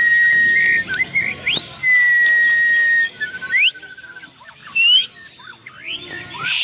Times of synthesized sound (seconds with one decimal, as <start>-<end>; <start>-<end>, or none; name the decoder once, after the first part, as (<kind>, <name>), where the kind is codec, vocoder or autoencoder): 4.6-5.1 (vocoder, BigVGAN v2)